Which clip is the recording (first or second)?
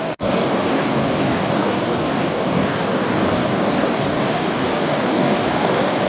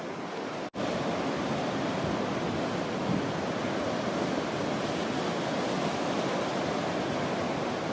second